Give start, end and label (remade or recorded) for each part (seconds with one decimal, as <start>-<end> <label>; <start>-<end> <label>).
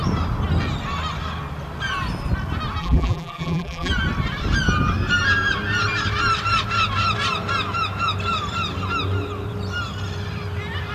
0.0-2.8 recorded; 2.8-3.9 remade; 3.9-10.9 recorded